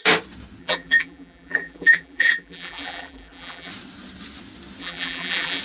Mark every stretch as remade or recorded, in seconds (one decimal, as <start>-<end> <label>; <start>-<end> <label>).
0.0-0.6 recorded; 0.6-3.7 remade; 3.7-4.8 recorded; 4.8-5.6 remade